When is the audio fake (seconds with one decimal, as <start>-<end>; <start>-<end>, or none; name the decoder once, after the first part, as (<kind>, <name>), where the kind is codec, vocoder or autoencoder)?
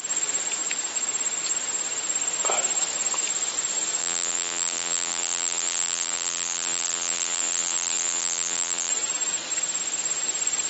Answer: 4.0-8.9 (vocoder, BigVGAN v2)